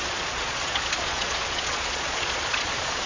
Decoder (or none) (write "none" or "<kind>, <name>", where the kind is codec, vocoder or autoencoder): vocoder, Vocos